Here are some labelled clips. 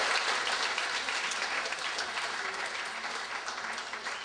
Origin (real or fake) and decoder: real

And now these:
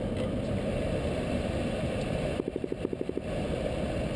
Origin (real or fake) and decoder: real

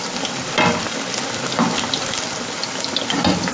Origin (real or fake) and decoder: real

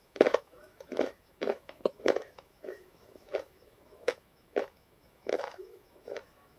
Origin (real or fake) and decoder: fake, autoencoder, DAC-VAE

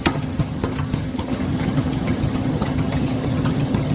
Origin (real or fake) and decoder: fake, vocoder, HiFi-GAN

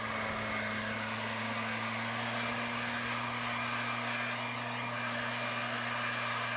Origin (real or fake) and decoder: real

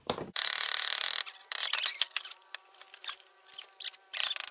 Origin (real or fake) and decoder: real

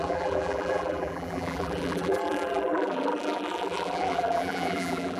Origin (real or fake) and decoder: fake, vocoder, BigVGAN v2